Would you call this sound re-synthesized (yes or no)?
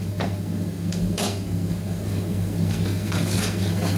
yes